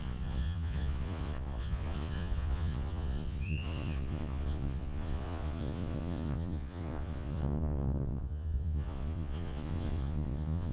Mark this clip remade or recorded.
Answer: remade